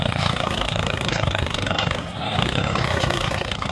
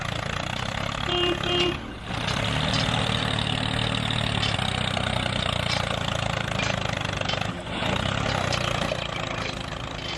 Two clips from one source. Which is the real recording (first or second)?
second